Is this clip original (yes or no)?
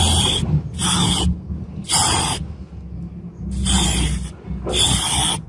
yes